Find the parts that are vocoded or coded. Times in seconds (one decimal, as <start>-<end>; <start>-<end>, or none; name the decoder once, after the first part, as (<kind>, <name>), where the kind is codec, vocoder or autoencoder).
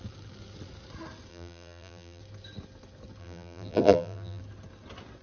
1.3-2.2 (vocoder, BigVGAN v2); 3.2-4.4